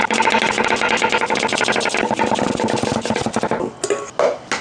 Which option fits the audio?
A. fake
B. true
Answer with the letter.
B